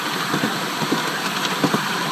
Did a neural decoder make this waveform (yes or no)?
no